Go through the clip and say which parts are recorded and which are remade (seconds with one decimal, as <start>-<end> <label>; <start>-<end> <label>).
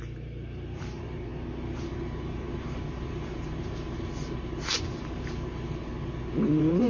0.0-1.3 remade; 1.3-1.8 recorded; 1.8-5.9 remade; 5.9-6.4 recorded; 6.4-6.9 remade